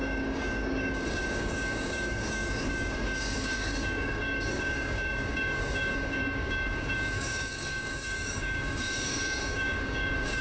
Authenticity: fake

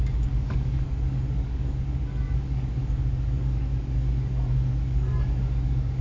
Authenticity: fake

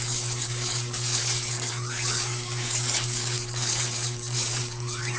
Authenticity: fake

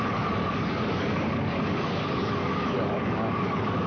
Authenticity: fake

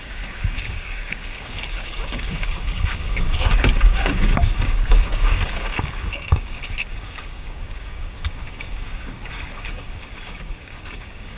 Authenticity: fake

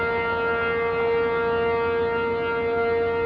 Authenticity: real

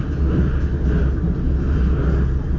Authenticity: real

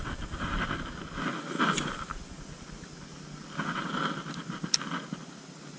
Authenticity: real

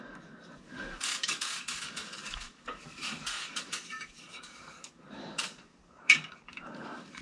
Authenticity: fake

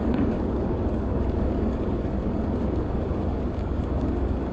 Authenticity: fake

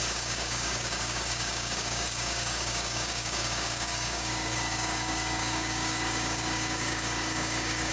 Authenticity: fake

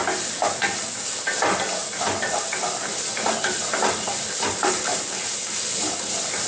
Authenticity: real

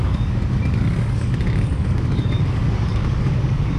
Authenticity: fake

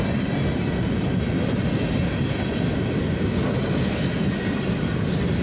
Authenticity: real